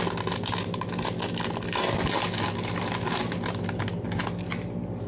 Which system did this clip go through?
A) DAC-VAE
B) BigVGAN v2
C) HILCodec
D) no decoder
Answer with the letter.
D